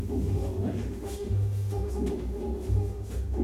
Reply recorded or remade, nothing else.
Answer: remade